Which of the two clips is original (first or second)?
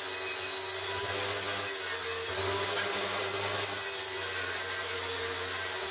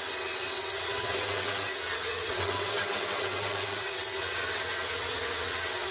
first